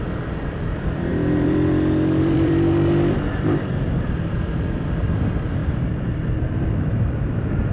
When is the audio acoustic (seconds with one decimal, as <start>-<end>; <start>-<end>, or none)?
none